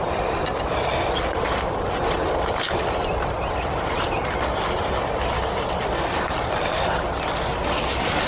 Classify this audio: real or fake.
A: real